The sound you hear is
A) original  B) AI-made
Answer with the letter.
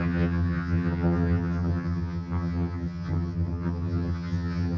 B